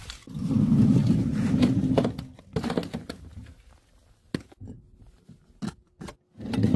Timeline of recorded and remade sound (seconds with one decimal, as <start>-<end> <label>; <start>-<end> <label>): 0.0-6.8 recorded